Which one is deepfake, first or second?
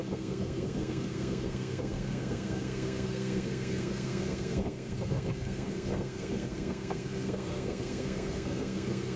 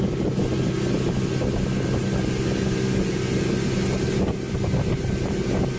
first